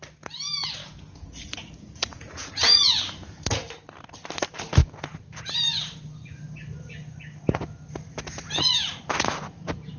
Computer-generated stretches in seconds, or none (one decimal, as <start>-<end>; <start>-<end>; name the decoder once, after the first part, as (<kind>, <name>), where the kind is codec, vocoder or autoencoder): 0.8-3.7 (vocoder, Vocos); 4.8-5.5